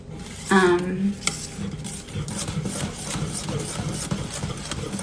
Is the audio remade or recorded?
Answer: recorded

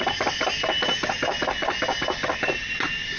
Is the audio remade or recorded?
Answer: recorded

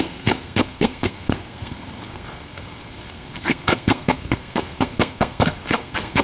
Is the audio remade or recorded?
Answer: remade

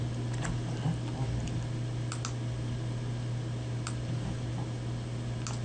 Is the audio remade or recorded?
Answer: recorded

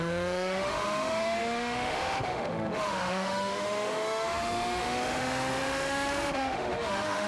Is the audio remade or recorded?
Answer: remade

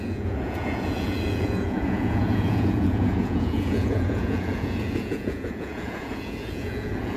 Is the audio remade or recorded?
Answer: remade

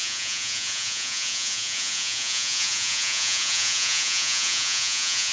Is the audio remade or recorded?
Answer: remade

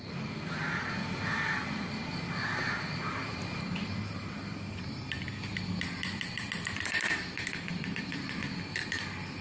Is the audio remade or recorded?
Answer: recorded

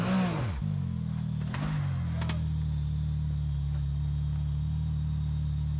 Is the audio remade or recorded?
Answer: recorded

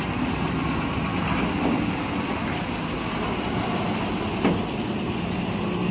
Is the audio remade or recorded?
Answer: recorded